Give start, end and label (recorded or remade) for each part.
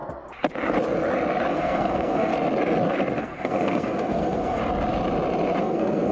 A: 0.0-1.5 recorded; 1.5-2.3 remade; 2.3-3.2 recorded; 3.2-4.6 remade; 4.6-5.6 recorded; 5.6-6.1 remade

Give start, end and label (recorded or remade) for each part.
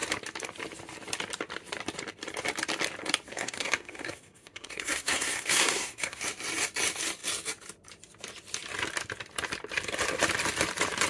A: 0.0-3.3 recorded; 3.3-6.2 remade; 6.2-11.1 recorded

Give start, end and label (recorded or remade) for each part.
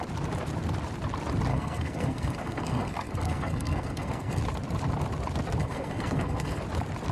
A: 0.0-1.5 recorded; 1.5-4.4 remade; 4.4-5.6 recorded; 5.6-6.6 remade; 6.6-7.1 recorded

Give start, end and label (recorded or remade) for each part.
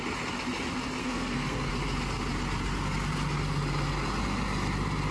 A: 0.0-1.0 recorded; 1.0-1.7 remade; 1.7-5.1 recorded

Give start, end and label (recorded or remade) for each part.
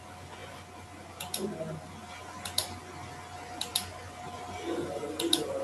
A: 0.0-5.6 recorded